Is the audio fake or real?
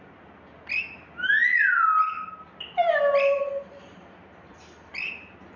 real